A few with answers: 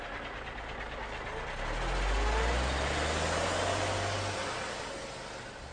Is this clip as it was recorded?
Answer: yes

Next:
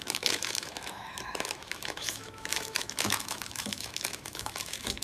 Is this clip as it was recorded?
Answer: no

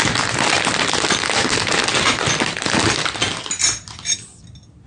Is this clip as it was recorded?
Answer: yes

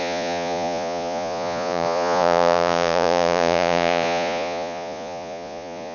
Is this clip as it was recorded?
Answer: no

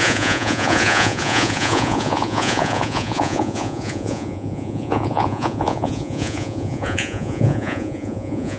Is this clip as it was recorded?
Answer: no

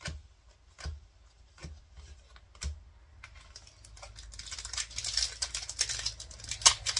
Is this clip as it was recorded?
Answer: yes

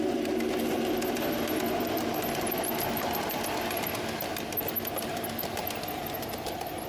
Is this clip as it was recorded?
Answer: yes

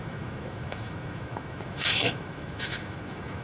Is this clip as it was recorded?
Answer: no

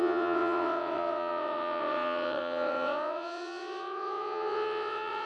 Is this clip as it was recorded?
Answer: no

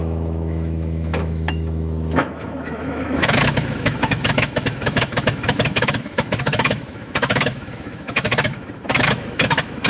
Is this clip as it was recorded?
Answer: no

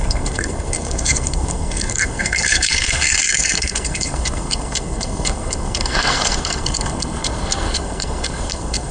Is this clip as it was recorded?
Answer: no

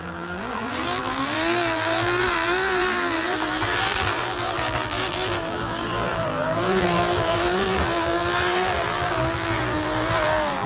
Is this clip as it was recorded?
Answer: no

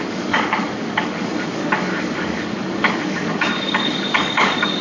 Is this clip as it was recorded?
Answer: no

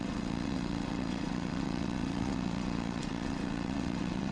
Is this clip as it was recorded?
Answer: no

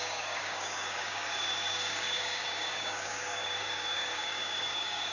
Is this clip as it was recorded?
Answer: no